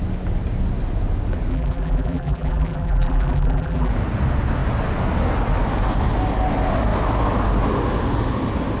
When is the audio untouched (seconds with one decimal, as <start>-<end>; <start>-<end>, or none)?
0.0-1.5; 3.9-8.8